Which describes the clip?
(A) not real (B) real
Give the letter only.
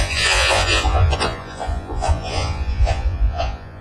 A